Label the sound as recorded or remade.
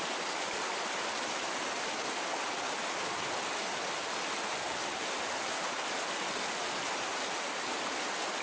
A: recorded